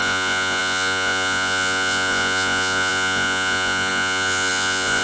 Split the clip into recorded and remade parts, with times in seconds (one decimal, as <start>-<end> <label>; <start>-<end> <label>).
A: 0.0-5.0 remade